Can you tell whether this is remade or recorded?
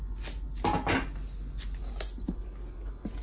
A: recorded